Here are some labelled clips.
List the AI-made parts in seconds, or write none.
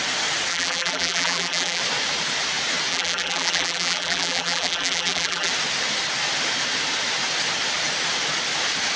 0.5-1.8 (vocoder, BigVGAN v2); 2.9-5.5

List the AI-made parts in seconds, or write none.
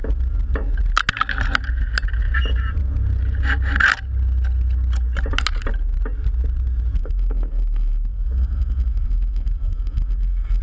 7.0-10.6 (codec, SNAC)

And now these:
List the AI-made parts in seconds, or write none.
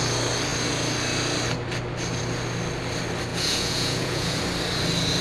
3.3-4.4 (vocoder, Vocos)